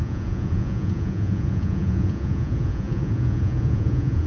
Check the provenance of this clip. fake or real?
fake